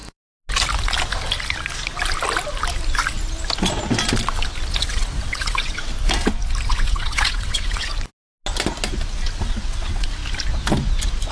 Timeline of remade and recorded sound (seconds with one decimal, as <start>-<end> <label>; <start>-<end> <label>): 0.0-4.8 recorded; 4.8-5.9 remade; 5.9-6.7 recorded; 6.7-7.9 remade; 7.9-9.4 recorded; 9.4-10.2 remade; 10.2-11.3 recorded